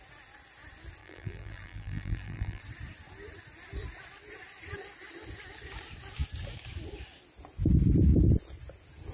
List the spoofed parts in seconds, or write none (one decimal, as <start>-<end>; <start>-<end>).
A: 1.0-2.6